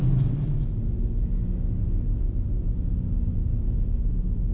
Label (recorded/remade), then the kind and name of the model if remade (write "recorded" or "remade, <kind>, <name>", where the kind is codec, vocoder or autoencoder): recorded